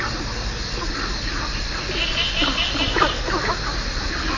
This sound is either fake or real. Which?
real